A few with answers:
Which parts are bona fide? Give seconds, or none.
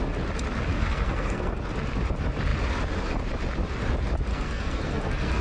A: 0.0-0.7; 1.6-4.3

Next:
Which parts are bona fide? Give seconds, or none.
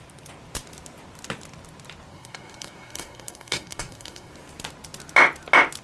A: 0.0-2.1; 4.3-5.8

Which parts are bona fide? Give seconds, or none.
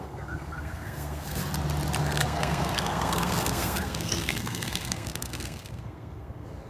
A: 1.4-2.0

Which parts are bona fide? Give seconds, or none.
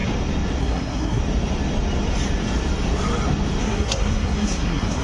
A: 0.0-0.6; 1.2-3.6